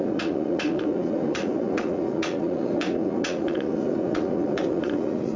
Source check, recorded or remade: remade